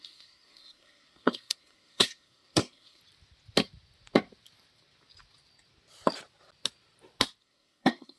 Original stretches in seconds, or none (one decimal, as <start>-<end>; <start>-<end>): 3.0-7.4